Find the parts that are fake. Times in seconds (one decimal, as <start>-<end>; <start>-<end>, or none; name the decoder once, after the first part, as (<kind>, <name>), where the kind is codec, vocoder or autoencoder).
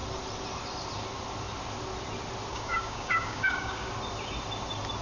2.5-3.9 (codec, DAC)